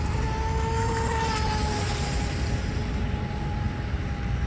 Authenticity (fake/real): real